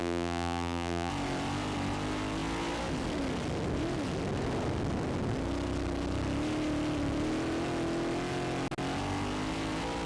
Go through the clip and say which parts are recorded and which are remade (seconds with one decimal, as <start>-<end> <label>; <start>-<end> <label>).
0.0-1.1 remade; 1.1-10.1 recorded